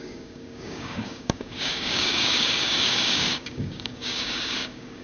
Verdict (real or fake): fake